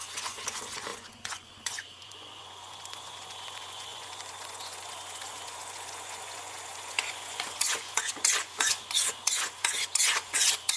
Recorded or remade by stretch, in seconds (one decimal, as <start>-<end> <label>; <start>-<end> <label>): 0.0-10.8 remade